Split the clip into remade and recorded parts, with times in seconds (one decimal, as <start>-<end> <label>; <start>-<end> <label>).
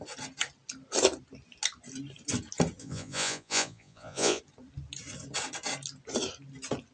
0.0-2.8 recorded; 2.8-4.4 remade; 4.4-6.9 recorded